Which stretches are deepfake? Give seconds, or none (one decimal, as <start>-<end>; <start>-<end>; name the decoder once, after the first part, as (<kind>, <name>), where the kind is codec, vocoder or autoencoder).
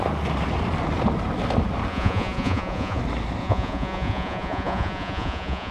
1.9-3.0 (vocoder, Vocos); 3.4-5.7